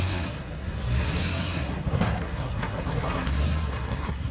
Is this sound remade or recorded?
remade